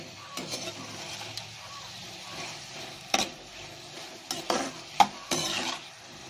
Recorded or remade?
remade